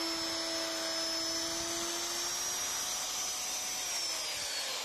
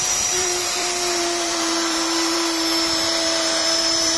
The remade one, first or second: second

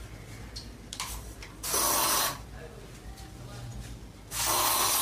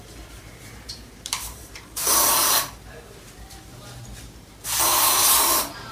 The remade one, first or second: second